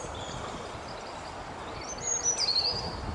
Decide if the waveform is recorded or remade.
remade